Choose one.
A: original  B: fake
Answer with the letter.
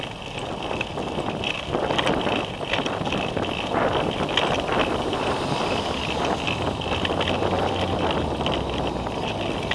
A